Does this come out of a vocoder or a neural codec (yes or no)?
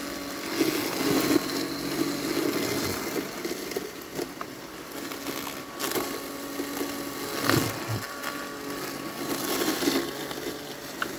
no